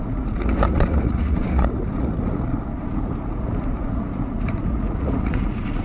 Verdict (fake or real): fake